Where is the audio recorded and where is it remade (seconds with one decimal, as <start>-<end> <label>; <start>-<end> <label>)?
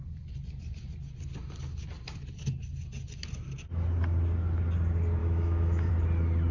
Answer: 0.0-5.2 recorded; 5.2-5.9 remade; 5.9-6.5 recorded